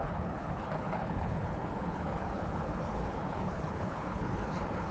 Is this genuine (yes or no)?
no